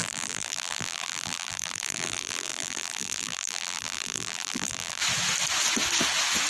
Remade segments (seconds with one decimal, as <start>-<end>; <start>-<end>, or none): 0.0-5.0